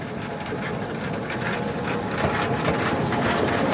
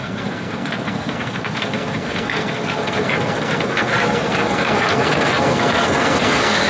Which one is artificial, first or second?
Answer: second